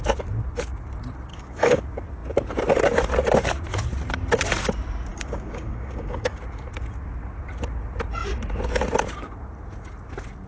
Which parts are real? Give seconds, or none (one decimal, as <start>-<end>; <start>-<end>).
0.0-1.3; 1.8-5.1; 6.4-10.5